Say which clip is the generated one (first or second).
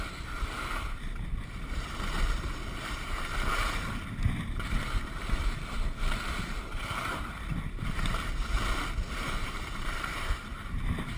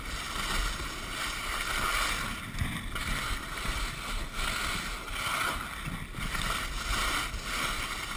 first